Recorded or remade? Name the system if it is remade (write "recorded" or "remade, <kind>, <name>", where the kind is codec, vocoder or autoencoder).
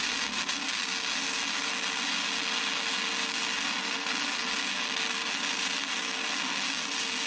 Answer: recorded